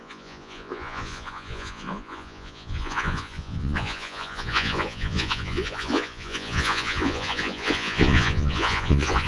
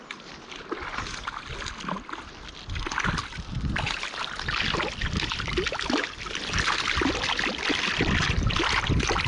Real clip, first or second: second